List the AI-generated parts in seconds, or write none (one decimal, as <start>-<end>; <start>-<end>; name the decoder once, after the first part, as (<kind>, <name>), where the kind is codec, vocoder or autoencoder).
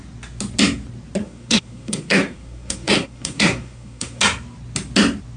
1.2-4.2 (codec, SNAC)